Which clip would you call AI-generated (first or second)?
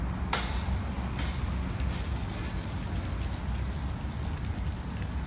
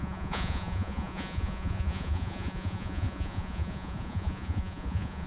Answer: second